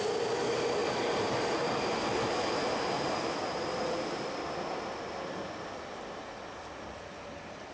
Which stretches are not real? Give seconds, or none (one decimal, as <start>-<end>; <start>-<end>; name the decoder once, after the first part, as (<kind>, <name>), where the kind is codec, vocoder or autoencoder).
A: none

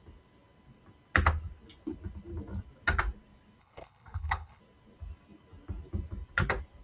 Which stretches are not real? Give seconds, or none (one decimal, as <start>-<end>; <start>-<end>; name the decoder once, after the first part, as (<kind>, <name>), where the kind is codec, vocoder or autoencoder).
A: 3.6-4.6 (codec, HILCodec)

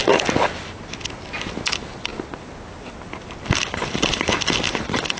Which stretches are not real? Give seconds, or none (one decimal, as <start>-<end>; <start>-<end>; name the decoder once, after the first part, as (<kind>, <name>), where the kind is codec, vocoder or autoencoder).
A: 1.7-2.1 (vocoder, BigVGAN v2); 3.7-5.2

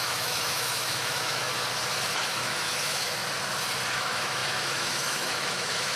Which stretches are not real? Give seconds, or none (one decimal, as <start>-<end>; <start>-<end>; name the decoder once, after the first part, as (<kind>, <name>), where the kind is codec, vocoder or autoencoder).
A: 0.0-1.5 (autoencoder, DAC-VAE); 2.1-3.2; 3.9-6.0

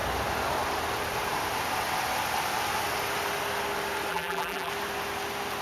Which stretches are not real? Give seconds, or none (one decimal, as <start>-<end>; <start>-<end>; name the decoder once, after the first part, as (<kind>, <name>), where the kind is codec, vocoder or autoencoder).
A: 4.1-4.7 (vocoder, BigVGAN v2)

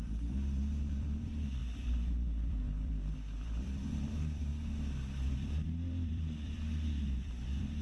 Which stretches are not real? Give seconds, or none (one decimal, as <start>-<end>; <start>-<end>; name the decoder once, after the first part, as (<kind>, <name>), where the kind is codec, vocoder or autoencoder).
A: 0.0-4.5 (vocoder, BigVGAN v2); 5.3-7.8